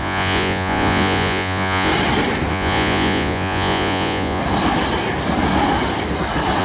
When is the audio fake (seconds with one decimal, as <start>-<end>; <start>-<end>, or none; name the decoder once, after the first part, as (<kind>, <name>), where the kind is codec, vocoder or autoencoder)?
0.0-1.9 (vocoder, Vocos); 2.5-4.4